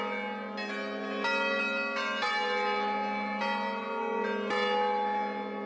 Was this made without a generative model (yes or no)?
yes